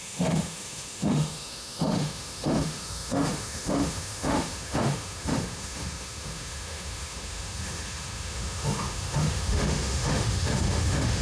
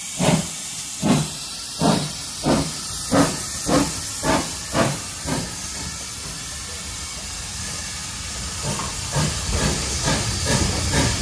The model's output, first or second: first